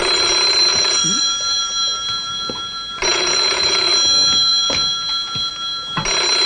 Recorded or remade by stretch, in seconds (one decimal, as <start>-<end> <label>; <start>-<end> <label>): 0.0-0.7 recorded; 0.7-1.2 remade; 1.2-3.1 recorded; 3.1-3.9 remade; 3.9-6.5 recorded